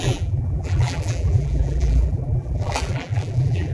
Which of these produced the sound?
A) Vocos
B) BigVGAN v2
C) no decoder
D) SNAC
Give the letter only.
B